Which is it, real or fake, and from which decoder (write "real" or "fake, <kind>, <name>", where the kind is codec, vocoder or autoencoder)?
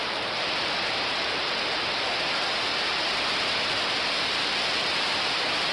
fake, vocoder, BigVGAN v2